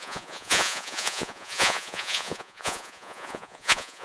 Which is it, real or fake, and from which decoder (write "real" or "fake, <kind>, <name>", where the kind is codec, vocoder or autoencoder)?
fake, vocoder, Vocos